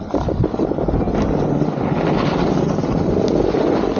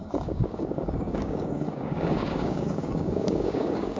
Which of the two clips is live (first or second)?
first